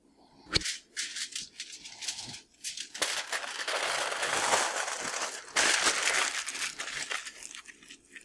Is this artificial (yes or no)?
no